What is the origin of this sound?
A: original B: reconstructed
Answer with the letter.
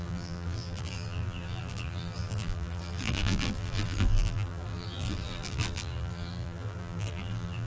B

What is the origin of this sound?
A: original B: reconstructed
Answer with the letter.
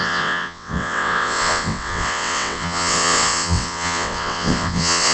B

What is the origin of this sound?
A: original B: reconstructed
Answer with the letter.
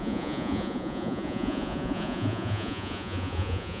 B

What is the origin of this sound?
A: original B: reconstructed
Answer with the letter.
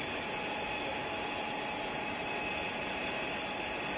A